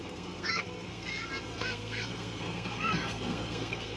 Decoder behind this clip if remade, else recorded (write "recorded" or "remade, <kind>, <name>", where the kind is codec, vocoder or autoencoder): remade, codec, SNAC